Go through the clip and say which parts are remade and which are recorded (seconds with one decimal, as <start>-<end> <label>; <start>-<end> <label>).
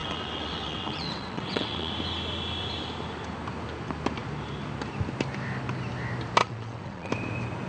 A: 0.0-1.9 remade; 1.9-6.4 recorded; 6.4-7.1 remade; 7.1-7.7 recorded